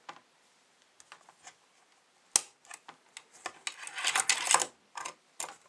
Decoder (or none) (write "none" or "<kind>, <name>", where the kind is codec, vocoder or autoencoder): none